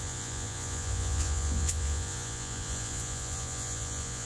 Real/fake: fake